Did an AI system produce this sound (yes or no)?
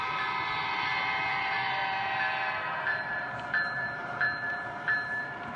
yes